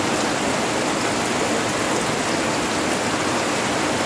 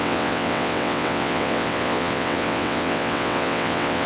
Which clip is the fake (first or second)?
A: second